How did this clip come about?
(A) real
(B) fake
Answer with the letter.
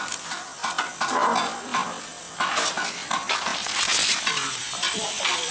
A